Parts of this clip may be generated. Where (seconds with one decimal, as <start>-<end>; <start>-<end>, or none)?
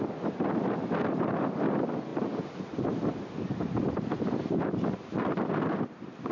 0.0-2.1; 3.1-6.3